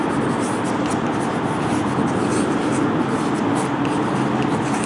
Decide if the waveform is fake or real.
real